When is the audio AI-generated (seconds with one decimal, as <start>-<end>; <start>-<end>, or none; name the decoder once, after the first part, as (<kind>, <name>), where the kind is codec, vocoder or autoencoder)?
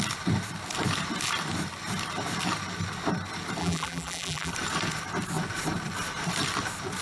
3.6-4.5 (vocoder, BigVGAN v2)